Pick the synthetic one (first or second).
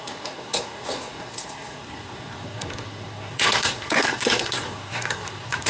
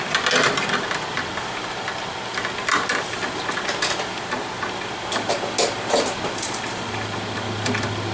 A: first